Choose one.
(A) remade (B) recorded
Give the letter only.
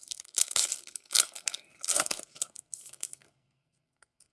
A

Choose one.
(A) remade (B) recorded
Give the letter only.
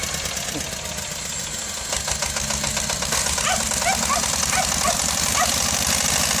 B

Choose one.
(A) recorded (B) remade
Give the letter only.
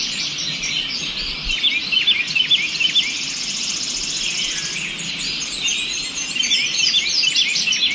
A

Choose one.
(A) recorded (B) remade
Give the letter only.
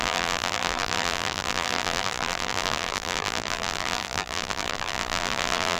B